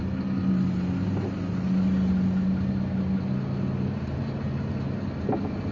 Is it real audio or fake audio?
real